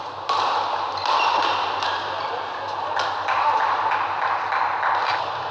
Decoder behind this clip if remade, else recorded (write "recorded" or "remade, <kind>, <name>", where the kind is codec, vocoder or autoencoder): recorded